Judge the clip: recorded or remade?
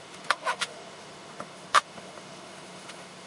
remade